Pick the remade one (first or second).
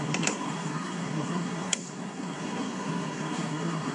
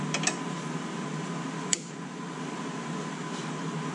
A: first